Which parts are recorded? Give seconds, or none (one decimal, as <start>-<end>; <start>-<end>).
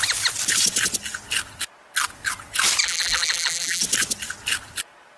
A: 0.0-2.8; 3.8-5.2